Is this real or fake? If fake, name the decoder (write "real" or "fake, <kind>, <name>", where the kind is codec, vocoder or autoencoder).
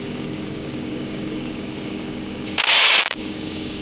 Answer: fake, codec, DAC